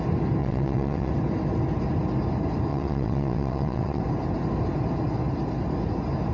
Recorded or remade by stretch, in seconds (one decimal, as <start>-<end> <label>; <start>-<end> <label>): 0.0-0.4 recorded; 0.4-1.1 remade; 1.1-2.7 recorded; 2.7-4.0 remade; 4.0-6.3 recorded